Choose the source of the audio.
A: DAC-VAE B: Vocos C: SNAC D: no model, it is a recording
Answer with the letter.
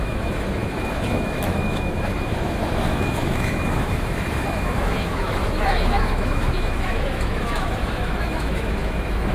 A